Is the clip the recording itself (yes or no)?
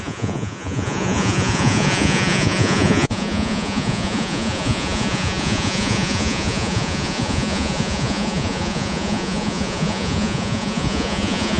no